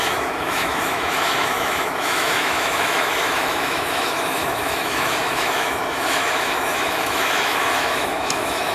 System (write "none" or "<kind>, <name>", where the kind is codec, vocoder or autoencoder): autoencoder, DAC-VAE